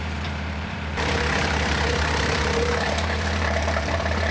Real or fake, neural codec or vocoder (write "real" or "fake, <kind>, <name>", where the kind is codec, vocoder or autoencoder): fake, vocoder, BigVGAN v2